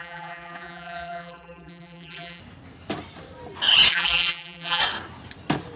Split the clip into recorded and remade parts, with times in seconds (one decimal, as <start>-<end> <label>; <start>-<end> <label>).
0.0-2.4 remade; 2.4-3.9 recorded; 3.9-4.8 remade; 4.8-5.8 recorded